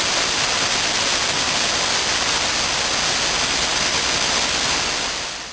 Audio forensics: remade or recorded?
recorded